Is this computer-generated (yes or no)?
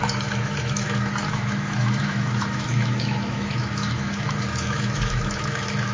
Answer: yes